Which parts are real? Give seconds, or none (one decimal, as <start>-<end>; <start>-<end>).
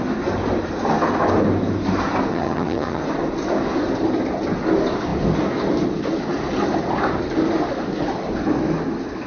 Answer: 0.0-2.3; 3.0-9.3